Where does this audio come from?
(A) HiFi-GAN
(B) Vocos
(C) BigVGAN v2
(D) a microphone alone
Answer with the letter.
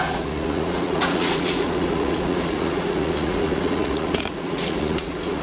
B